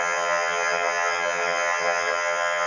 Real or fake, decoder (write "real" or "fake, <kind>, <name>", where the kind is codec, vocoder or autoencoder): fake, vocoder, HiFi-GAN